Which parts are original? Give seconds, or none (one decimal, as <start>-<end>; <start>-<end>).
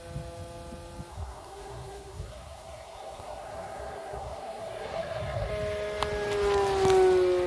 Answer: 0.0-1.1; 5.5-7.5